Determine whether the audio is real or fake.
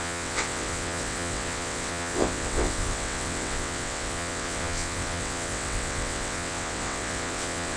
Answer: fake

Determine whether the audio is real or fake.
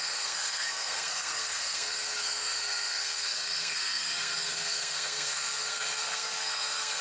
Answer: fake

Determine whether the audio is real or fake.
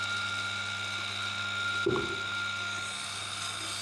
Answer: real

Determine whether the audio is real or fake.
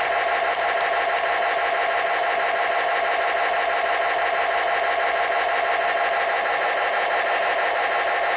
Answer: real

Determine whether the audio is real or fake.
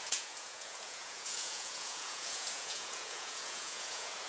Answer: fake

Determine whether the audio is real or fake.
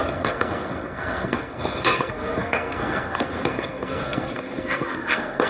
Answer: fake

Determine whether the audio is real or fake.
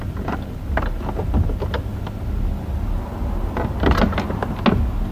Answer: real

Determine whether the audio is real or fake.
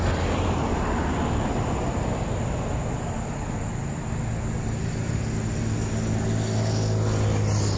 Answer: real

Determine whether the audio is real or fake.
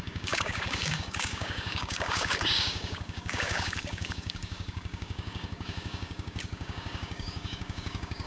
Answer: fake